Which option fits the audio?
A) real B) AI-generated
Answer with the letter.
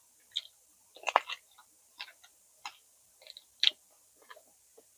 A